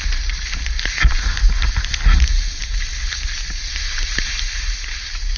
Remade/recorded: recorded